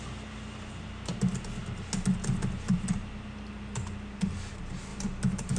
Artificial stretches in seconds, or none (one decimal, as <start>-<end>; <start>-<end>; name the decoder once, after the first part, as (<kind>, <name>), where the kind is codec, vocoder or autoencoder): none